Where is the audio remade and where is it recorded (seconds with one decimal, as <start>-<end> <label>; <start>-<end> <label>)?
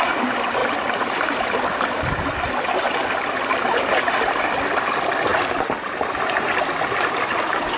0.0-7.8 recorded